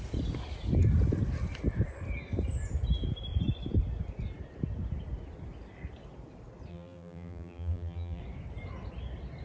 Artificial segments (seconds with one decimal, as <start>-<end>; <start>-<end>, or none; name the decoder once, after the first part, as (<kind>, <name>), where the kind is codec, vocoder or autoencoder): 6.7-8.2 (vocoder, BigVGAN v2)